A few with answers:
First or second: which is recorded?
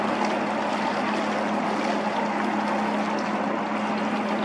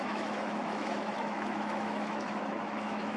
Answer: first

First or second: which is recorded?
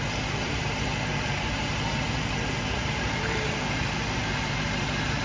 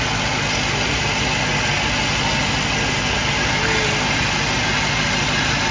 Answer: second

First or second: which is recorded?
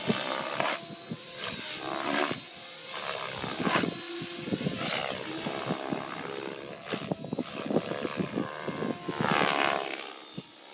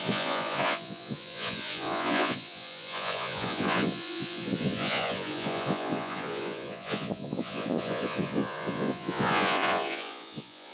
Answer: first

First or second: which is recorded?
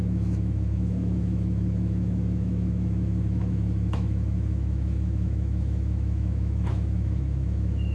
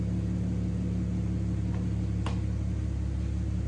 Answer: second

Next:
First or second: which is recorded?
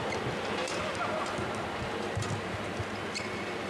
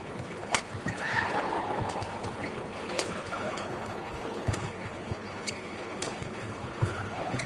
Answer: first